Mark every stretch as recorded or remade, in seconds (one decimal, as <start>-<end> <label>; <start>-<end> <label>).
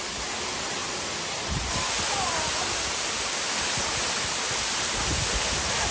0.0-5.9 recorded